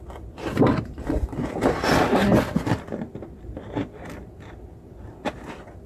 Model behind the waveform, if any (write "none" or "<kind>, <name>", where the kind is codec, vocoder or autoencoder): none